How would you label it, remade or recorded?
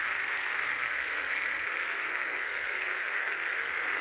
remade